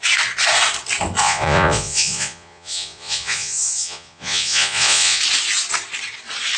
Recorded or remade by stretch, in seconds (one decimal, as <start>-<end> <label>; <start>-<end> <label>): 0.0-1.2 recorded; 1.2-5.2 remade; 5.2-6.6 recorded